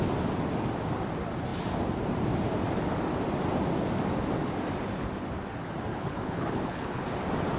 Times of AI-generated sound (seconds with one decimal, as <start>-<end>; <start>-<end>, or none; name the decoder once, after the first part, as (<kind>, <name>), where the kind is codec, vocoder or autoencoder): 5.9-7.0 (codec, HILCodec)